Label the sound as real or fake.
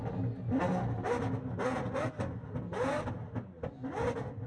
real